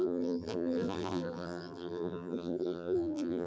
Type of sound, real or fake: fake